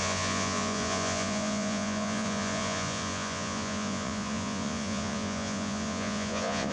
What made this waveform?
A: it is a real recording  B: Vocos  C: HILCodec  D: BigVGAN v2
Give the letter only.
B